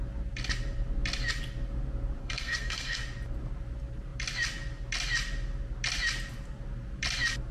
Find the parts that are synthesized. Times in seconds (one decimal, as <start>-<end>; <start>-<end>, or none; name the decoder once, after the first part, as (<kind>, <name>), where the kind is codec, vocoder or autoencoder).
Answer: 2.2-3.0 (codec, SNAC)